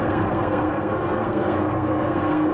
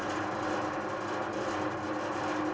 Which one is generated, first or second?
first